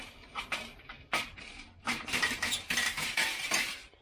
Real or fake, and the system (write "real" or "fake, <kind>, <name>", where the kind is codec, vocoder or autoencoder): fake, vocoder, BigVGAN v2